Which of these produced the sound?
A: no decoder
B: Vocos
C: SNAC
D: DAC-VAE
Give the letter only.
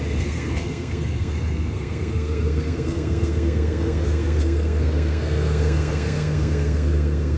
C